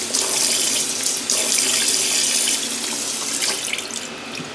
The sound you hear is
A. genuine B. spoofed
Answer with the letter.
A